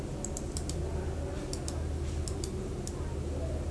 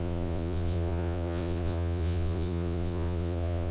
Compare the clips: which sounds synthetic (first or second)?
second